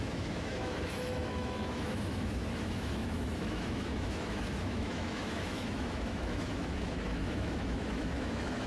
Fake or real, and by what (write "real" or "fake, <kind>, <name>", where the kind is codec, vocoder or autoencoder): fake, autoencoder, DAC-VAE